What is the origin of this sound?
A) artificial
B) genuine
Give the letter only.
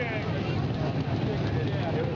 B